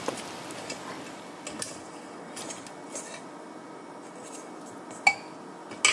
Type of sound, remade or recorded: recorded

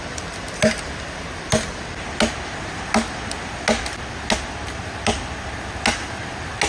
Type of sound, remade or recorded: recorded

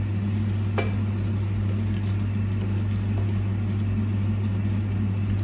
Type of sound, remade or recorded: recorded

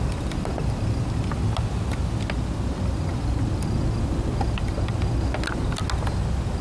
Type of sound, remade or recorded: recorded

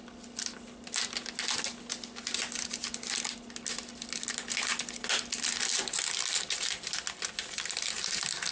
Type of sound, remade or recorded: recorded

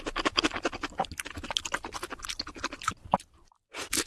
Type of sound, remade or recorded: recorded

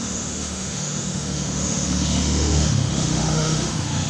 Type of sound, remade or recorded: remade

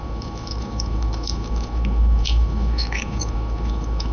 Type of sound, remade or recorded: remade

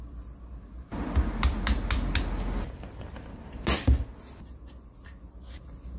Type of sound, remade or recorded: recorded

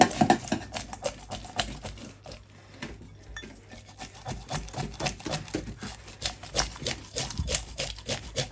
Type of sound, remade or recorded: recorded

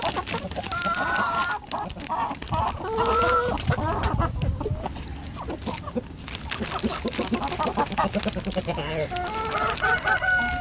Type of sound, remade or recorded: recorded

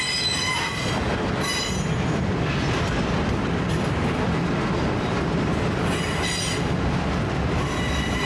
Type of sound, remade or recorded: recorded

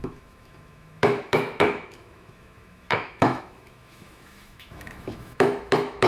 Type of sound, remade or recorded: remade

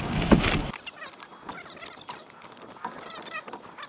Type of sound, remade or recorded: recorded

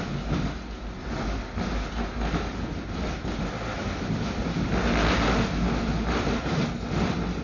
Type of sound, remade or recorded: recorded